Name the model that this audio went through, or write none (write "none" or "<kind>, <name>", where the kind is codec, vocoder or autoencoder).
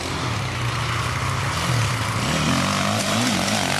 none